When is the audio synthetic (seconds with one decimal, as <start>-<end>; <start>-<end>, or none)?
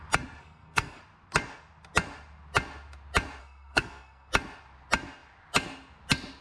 0.4-1.0; 3.4-4.3